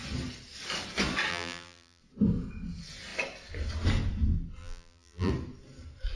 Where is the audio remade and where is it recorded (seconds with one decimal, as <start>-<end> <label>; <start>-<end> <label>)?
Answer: 0.0-1.3 recorded; 1.3-2.0 remade; 2.0-4.6 recorded; 4.6-5.3 remade; 5.3-6.2 recorded